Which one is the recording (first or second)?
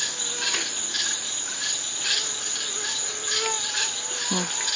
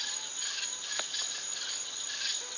first